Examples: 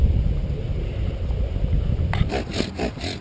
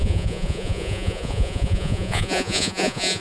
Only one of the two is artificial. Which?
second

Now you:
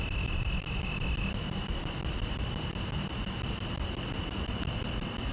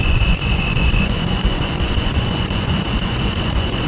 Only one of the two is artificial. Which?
second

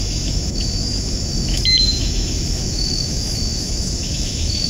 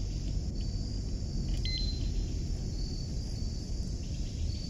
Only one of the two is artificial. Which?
first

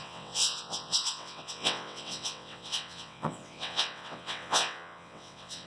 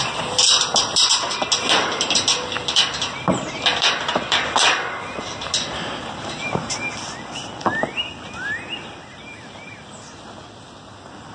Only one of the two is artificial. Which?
first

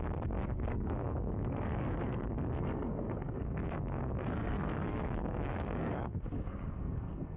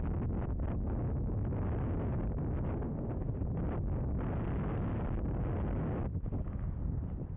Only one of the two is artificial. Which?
first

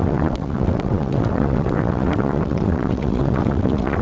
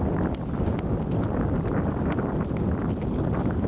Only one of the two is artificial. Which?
first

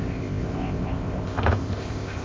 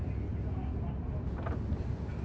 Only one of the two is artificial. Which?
first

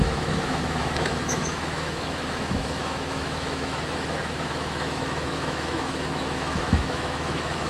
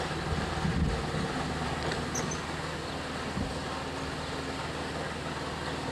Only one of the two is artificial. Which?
first